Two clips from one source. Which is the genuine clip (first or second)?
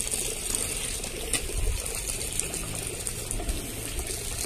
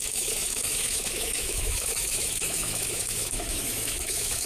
first